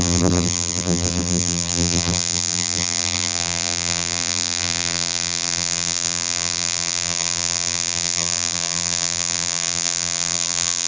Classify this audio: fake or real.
fake